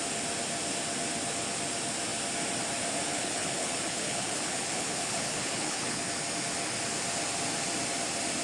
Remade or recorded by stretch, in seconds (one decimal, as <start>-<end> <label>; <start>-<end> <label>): 0.0-3.1 recorded; 3.1-6.0 remade; 6.0-8.4 recorded